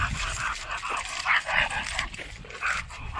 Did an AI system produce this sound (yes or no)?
no